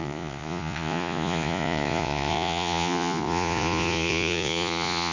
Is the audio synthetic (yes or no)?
yes